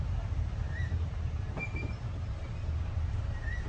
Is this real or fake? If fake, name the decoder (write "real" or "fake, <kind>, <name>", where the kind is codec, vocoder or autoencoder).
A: fake, vocoder, BigVGAN v2